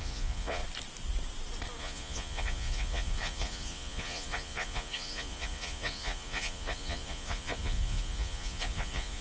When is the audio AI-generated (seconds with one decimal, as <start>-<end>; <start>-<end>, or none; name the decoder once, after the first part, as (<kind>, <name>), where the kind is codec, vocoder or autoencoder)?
0.0-0.6 (vocoder, Vocos); 1.8-9.2